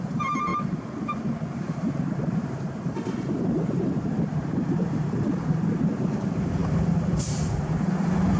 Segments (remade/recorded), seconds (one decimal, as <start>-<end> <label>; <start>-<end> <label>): 0.0-0.5 remade; 0.5-1.5 recorded; 1.5-8.4 remade

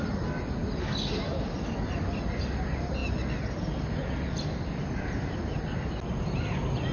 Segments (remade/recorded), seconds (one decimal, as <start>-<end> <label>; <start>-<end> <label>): 0.0-6.9 recorded

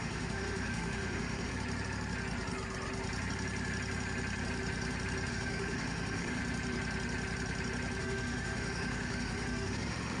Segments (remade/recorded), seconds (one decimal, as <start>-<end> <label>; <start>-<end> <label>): 0.0-1.5 remade; 1.5-5.3 recorded; 5.3-6.4 remade; 6.4-8.0 recorded; 8.0-10.2 remade

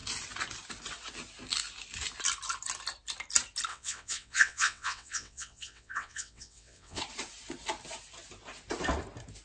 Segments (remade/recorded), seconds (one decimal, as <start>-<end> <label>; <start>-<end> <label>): 0.0-3.7 recorded; 3.7-7.0 remade; 7.0-9.4 recorded